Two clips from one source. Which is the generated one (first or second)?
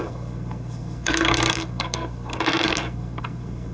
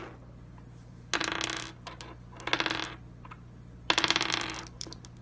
first